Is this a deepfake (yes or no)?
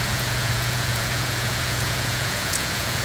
yes